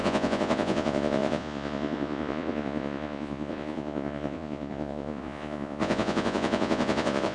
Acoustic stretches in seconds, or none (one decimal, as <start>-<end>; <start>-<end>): none